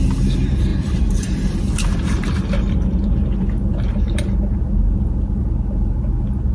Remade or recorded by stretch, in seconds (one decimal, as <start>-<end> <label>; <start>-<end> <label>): 0.0-0.7 recorded; 0.7-4.6 remade; 4.6-6.5 recorded